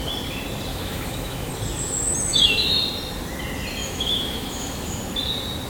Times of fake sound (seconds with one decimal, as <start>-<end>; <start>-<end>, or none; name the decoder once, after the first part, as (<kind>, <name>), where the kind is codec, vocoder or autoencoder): 0.7-1.5 (autoencoder, DAC-VAE); 2.3-2.8; 3.8-5.0